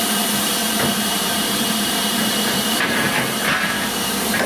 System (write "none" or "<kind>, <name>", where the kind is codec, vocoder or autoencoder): vocoder, BigVGAN v2